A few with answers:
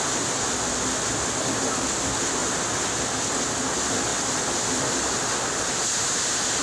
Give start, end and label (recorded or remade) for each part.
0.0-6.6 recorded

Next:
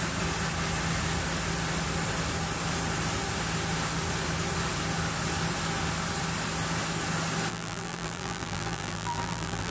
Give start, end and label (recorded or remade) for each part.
0.0-7.5 recorded; 7.5-9.7 remade

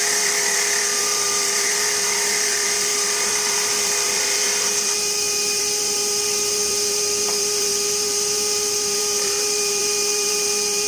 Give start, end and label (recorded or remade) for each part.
0.0-10.9 remade

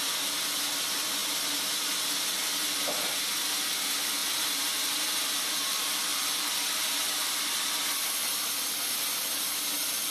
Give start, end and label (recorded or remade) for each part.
0.0-6.1 recorded; 6.1-7.8 remade; 7.8-10.1 recorded